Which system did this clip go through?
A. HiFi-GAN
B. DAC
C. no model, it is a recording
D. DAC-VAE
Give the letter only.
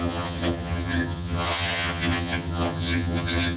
A